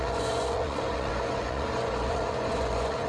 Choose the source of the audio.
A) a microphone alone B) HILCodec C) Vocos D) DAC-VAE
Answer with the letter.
C